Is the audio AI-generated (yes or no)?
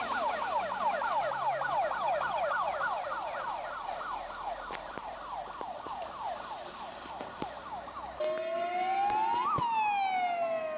no